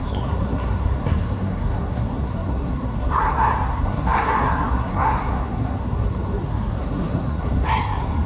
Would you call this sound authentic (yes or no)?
no